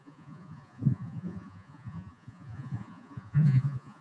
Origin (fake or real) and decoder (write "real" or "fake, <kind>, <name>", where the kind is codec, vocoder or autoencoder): fake, vocoder, Vocos